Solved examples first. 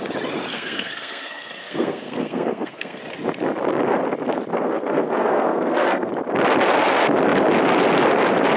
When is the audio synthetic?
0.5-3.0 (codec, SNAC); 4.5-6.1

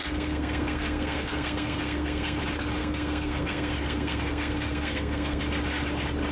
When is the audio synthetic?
0.0-2.4 (codec, SNAC); 2.8-5.4

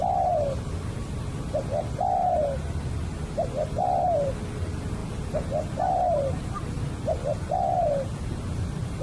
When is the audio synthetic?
none

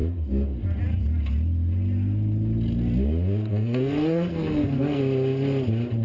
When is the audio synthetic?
3.5-5.0 (codec, SNAC)

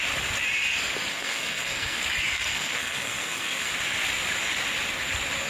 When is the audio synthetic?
1.1-2.0 (codec, SNAC); 2.5-3.7

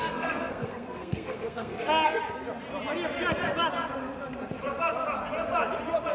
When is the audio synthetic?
0.0-2.2 (codec, SNAC)